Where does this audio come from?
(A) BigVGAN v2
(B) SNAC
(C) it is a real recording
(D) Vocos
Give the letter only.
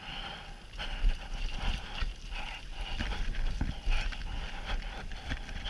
C